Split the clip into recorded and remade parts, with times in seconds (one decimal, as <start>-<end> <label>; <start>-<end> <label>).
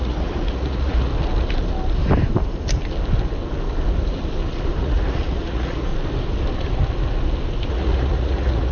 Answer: 0.0-1.1 remade; 1.1-4.8 recorded; 4.8-5.9 remade; 5.9-7.7 recorded; 7.7-8.7 remade